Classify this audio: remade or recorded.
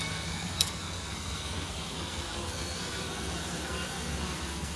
remade